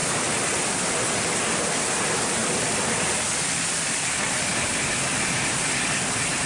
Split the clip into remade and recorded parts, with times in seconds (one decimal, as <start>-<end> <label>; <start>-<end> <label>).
0.0-2.4 recorded; 2.4-6.5 remade